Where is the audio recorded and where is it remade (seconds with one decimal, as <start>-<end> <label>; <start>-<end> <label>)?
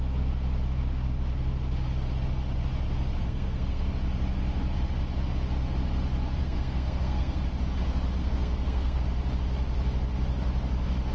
0.0-3.2 recorded; 3.2-3.9 remade; 3.9-6.4 recorded; 6.4-7.4 remade; 7.4-8.2 recorded; 8.2-9.0 remade; 9.0-11.1 recorded